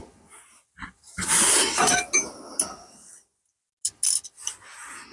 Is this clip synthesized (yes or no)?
no